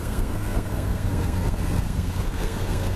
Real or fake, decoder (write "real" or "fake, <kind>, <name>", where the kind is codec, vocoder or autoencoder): fake, codec, SNAC